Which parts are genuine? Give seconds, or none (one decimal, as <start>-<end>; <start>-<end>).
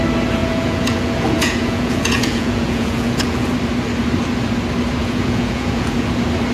0.0-0.4; 3.5-5.0; 6.1-6.5